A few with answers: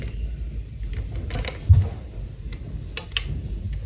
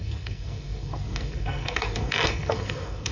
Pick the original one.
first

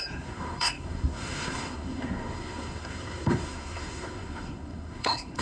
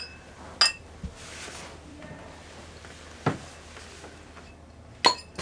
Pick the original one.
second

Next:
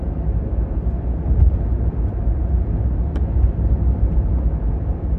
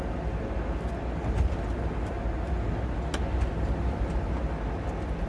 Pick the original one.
second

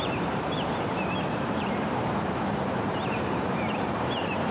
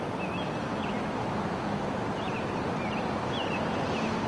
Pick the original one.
second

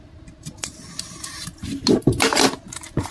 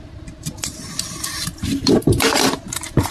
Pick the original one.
first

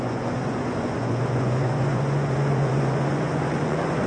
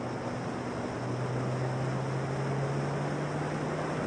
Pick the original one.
second